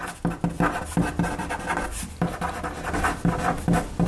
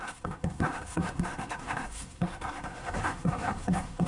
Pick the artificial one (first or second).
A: second